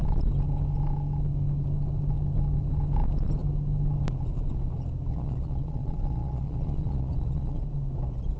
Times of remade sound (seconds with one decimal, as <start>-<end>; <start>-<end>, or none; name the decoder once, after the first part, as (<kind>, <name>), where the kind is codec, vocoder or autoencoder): 5.1-7.6 (vocoder, Vocos)